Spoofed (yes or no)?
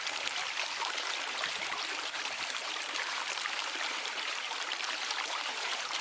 yes